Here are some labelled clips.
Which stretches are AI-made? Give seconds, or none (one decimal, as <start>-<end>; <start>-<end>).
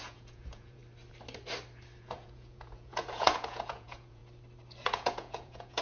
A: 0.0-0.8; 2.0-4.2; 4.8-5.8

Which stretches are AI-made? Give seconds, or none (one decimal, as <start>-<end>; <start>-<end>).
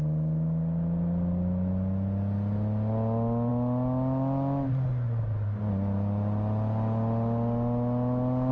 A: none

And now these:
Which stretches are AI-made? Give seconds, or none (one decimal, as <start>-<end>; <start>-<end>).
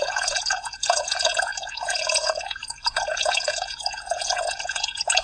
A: 0.0-5.2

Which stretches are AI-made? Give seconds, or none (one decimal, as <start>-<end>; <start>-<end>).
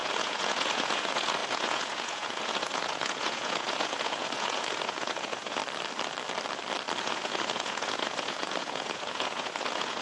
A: 0.0-5.6; 7.0-10.0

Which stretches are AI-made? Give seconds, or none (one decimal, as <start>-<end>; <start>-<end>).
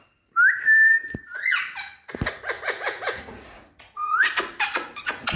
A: 1.0-4.2; 4.7-5.4